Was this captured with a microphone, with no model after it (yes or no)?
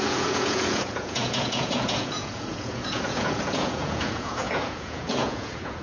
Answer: no